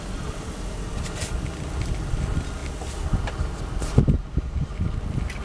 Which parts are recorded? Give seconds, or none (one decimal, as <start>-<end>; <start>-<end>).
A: 0.0-5.4